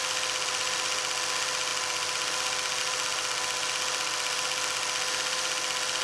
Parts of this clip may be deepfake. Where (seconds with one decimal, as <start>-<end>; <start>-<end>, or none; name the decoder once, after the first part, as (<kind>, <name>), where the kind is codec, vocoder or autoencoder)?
none